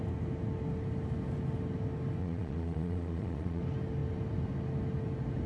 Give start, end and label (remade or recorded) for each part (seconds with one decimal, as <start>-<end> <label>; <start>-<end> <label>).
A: 0.0-2.2 recorded; 2.2-3.6 remade; 3.6-5.5 recorded